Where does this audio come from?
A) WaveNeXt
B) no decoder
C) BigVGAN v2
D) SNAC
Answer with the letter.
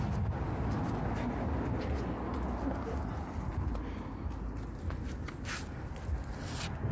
B